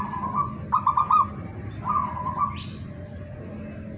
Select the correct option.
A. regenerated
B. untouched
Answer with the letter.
B